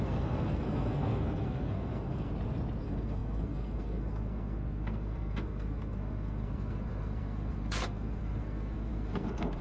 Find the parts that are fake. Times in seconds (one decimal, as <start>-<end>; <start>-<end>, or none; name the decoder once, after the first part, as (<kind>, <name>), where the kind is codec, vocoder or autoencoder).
0.0-2.3 (codec, SNAC); 2.8-9.6